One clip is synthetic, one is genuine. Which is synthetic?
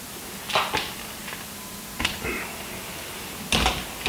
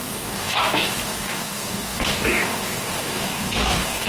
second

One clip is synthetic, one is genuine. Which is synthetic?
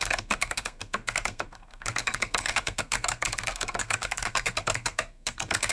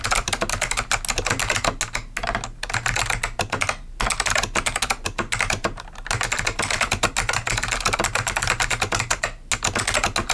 first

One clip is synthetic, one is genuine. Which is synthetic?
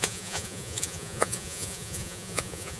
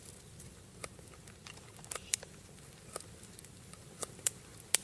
first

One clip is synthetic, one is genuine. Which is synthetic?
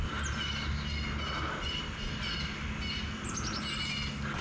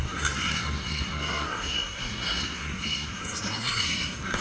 second